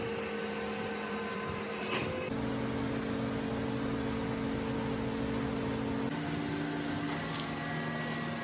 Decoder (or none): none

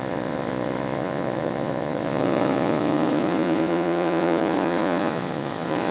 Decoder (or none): vocoder, Vocos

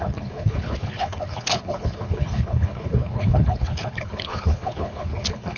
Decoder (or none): codec, HILCodec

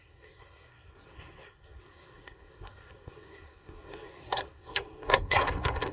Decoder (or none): codec, SNAC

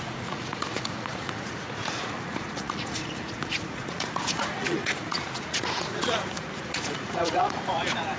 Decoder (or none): vocoder, Vocos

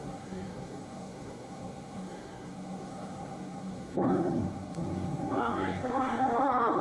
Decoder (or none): codec, SNAC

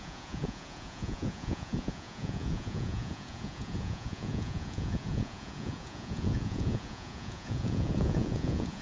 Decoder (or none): vocoder, Vocos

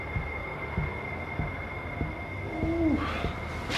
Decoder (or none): none